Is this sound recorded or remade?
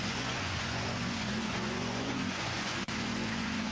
remade